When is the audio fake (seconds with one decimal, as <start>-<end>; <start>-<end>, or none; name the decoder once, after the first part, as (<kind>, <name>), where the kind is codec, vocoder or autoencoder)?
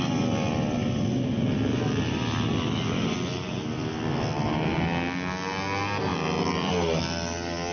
6.1-6.7 (vocoder, BigVGAN v2)